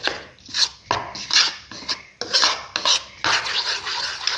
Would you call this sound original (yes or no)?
yes